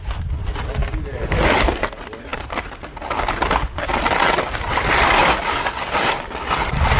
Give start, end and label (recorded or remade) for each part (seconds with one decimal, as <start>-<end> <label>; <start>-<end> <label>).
0.0-7.0 recorded